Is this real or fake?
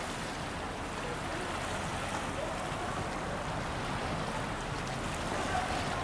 real